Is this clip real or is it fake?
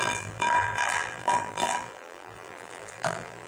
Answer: fake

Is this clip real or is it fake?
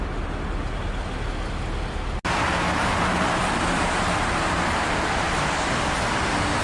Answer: real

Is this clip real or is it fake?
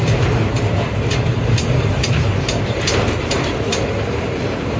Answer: fake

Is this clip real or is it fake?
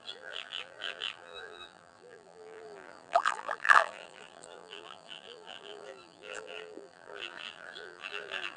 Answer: fake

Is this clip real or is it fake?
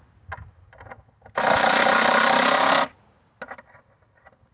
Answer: real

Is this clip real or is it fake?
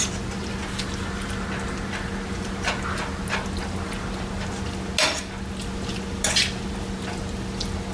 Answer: real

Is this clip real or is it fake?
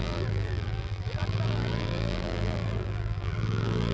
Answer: fake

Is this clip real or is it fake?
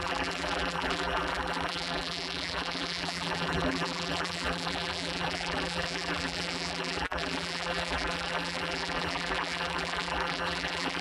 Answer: fake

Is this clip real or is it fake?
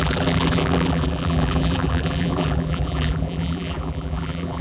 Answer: fake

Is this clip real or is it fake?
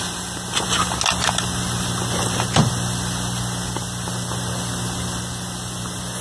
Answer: real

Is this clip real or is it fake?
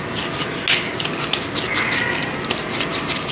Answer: real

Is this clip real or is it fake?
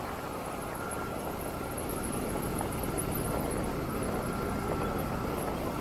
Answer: real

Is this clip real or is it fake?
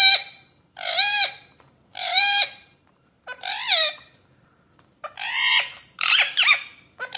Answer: fake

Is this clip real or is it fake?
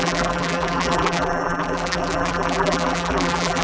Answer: fake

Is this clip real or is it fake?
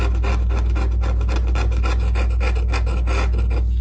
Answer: real